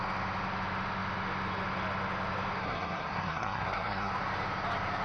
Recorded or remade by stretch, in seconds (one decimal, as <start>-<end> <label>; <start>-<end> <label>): 0.0-2.6 recorded; 2.6-4.1 remade; 4.1-5.0 recorded